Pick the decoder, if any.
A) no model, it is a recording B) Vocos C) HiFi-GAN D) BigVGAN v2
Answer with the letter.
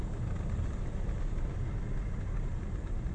A